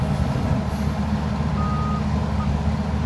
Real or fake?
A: real